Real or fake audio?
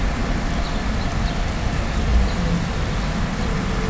real